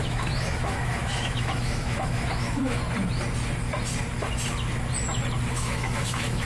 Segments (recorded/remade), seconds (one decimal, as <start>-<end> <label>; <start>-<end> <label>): 0.0-2.8 remade; 2.8-5.5 recorded; 5.5-6.5 remade